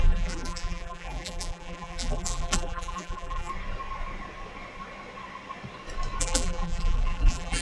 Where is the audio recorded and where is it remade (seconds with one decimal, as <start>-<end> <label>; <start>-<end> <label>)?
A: 0.0-3.5 remade; 3.5-6.2 recorded; 6.2-7.6 remade